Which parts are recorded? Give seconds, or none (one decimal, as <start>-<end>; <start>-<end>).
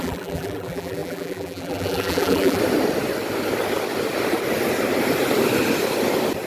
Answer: 2.6-6.5